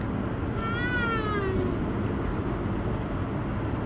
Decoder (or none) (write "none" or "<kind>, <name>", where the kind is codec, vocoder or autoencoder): none